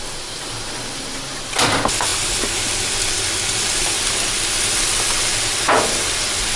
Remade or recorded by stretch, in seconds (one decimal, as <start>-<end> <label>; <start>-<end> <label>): 0.0-6.6 recorded